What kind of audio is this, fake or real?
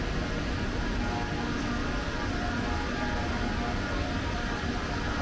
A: real